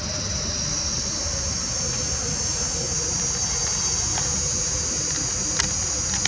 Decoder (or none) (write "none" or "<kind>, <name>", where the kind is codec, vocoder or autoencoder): none